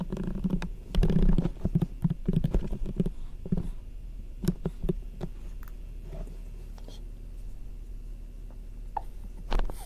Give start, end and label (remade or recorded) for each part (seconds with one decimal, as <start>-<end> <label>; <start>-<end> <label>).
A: 0.0-2.0 recorded; 2.0-4.7 remade; 4.7-9.9 recorded